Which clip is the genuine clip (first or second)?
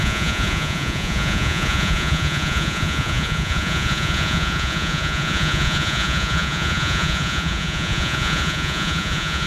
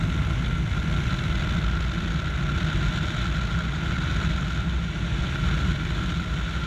second